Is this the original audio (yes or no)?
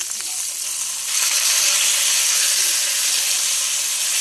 yes